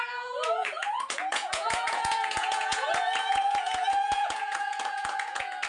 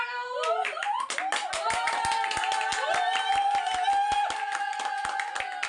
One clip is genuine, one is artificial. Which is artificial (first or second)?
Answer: first